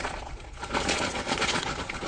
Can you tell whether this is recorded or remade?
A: remade